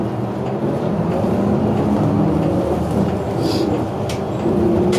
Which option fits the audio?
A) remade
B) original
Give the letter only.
B